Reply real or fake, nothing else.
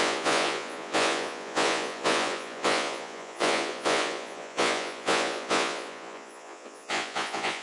fake